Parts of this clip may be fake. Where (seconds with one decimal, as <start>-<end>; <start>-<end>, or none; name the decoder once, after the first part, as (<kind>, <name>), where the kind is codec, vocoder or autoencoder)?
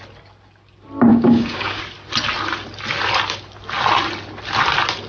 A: 1.1-1.8 (codec, DAC)